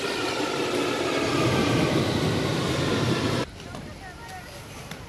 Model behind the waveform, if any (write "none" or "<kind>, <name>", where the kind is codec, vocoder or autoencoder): none